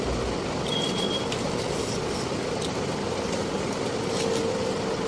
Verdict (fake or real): real